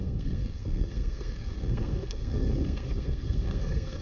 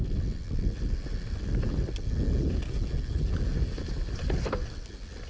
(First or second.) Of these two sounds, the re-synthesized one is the first